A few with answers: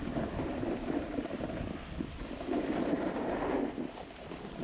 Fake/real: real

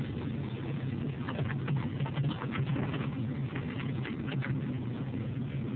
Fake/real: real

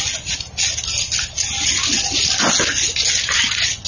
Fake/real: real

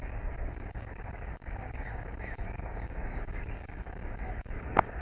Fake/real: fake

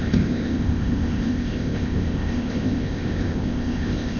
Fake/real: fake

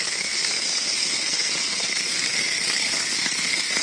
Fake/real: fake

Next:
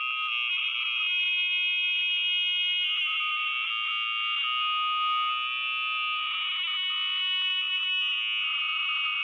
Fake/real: real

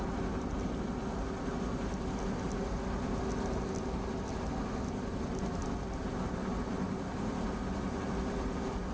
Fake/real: real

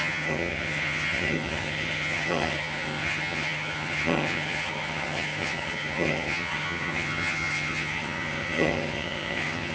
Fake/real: fake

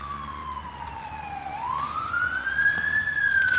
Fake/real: fake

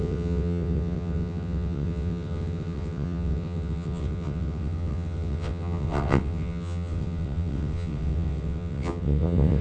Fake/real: fake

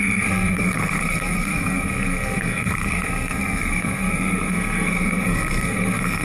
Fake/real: fake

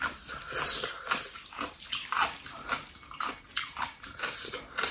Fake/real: fake